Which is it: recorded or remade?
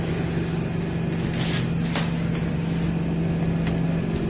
recorded